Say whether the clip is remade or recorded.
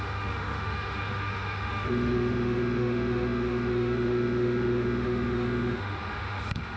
remade